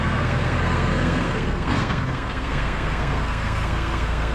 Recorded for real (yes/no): no